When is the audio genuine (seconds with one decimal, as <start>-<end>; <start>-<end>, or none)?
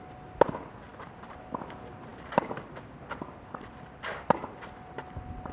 0.0-5.5